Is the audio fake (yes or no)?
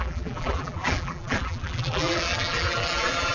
yes